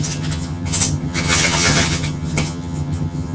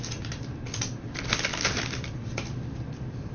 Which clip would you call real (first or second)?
second